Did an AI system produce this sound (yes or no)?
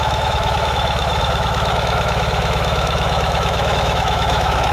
yes